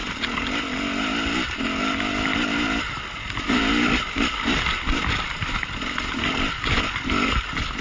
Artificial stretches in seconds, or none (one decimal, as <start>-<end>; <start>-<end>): none